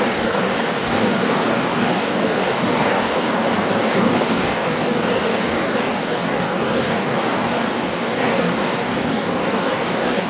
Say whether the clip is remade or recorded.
remade